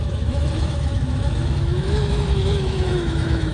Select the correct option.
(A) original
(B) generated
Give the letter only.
B